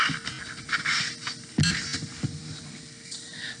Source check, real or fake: real